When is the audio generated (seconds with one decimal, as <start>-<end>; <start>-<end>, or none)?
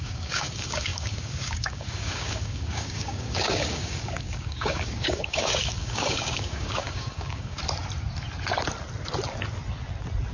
0.0-7.6